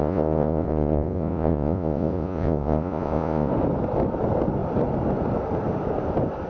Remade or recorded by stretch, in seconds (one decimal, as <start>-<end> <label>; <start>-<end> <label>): 0.0-3.5 remade; 3.5-6.5 recorded